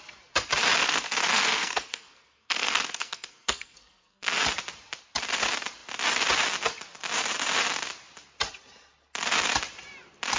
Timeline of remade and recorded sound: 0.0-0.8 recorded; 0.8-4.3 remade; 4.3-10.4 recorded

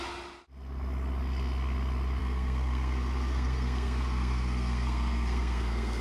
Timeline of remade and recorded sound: 0.0-2.2 recorded; 2.2-6.0 remade

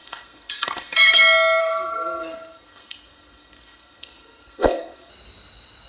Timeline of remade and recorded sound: 0.0-1.2 remade; 1.2-1.6 recorded; 1.6-5.1 remade; 5.1-5.9 recorded

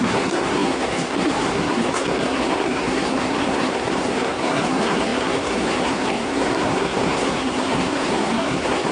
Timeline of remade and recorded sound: 0.0-8.9 remade

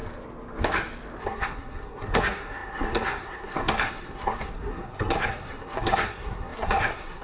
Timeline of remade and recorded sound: 0.0-1.2 recorded; 1.2-7.2 remade

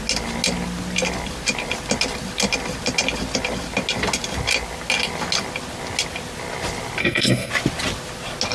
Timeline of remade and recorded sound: 0.0-7.0 recorded; 7.0-7.5 remade; 7.5-8.5 recorded

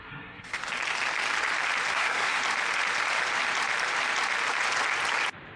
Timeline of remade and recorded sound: 0.0-0.6 remade; 0.6-1.9 recorded; 1.9-2.4 remade; 2.4-5.6 recorded